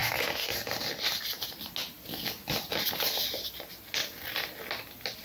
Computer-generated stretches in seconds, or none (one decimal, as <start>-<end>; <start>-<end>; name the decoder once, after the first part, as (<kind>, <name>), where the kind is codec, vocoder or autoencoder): none